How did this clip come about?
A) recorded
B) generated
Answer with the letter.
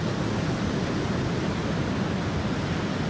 A